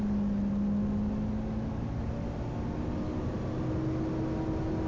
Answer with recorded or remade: recorded